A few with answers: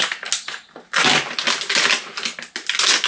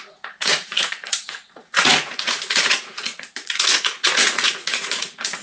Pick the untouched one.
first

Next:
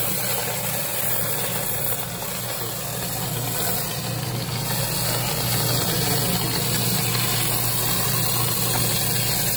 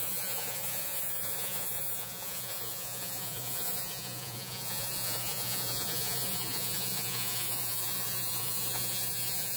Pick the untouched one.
first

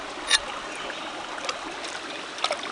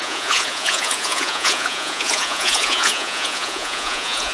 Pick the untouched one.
first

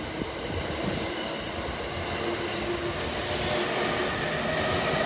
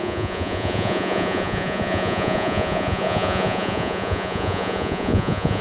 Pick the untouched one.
first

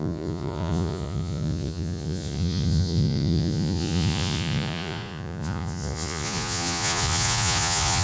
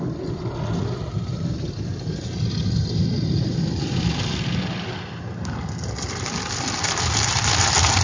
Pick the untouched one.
second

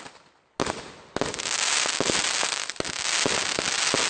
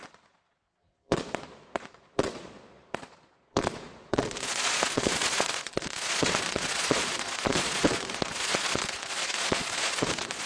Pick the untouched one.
first